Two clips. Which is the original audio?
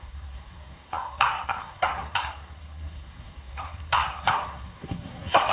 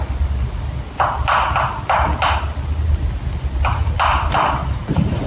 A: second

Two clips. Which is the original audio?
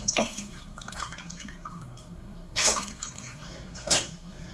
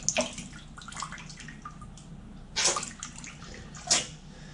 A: second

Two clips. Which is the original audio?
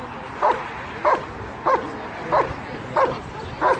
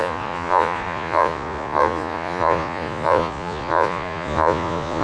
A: first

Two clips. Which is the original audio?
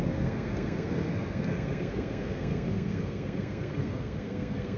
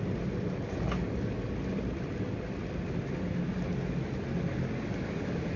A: second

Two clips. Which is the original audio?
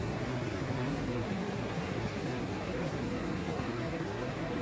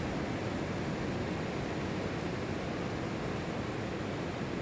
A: second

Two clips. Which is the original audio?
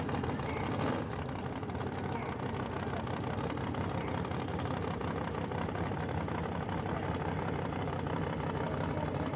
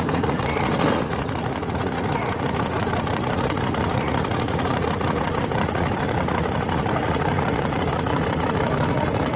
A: first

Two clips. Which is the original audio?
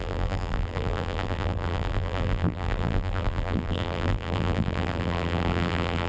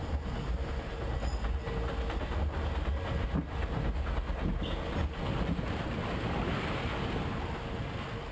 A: second